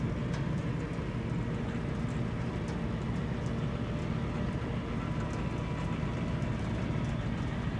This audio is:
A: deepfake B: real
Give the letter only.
B